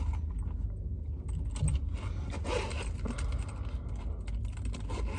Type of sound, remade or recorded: recorded